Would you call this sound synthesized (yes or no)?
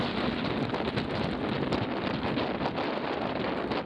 no